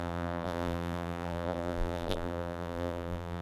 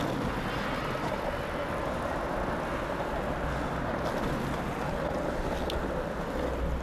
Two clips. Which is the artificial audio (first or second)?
first